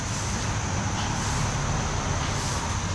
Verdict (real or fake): real